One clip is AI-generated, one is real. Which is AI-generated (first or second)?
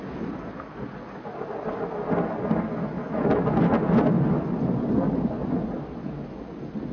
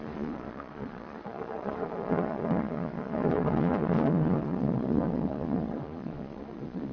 second